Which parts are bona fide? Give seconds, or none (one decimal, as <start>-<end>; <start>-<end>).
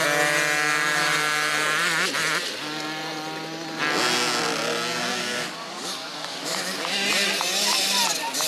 0.0-5.1; 6.9-8.5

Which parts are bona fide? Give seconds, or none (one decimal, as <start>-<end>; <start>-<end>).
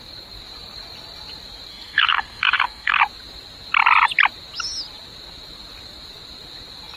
0.0-1.7; 3.0-7.0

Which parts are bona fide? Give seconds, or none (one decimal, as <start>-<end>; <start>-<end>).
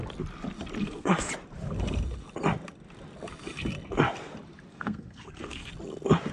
0.0-0.8; 1.3-4.7; 5.7-6.3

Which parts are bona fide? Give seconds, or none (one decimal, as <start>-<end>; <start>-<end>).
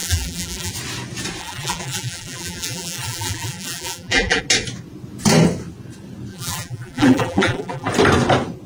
0.7-1.4; 4.4-6.3; 7.9-8.7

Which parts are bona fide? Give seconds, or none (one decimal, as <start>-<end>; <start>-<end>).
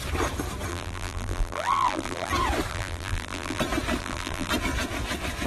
0.0-0.7; 2.3-2.7; 3.6-4.0; 4.5-5.5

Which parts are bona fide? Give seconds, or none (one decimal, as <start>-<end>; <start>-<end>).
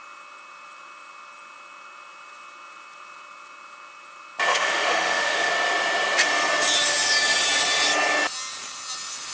0.0-4.5; 5.5-9.3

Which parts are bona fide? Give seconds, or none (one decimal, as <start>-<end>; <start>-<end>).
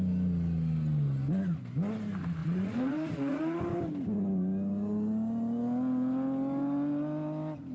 0.0-2.4; 3.6-7.7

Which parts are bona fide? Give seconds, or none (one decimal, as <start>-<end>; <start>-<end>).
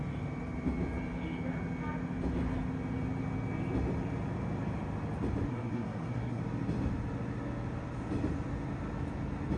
0.0-5.5; 6.4-9.6